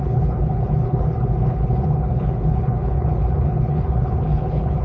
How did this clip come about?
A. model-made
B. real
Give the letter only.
A